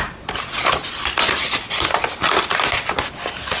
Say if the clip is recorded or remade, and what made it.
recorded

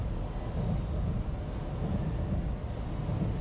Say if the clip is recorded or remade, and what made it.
recorded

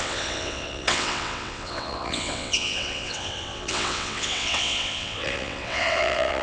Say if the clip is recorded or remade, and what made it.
remade, vocoder, WaveNeXt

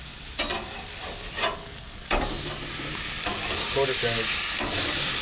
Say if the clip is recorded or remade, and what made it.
recorded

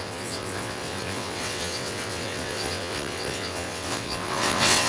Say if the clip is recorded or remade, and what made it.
remade, vocoder, WaveNeXt